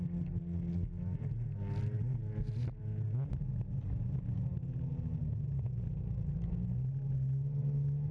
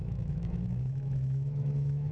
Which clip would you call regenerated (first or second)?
second